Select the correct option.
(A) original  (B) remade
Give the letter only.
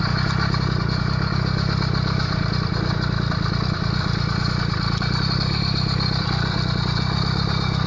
A